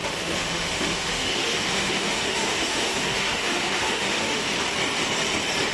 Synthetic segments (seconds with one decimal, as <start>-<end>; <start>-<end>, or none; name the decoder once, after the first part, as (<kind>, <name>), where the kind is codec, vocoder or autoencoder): 0.0-4.5 (autoencoder, DAC-VAE)